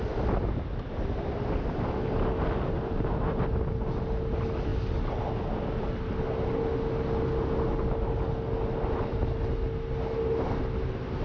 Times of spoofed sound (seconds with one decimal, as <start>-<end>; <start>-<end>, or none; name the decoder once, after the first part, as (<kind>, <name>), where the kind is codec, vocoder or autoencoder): none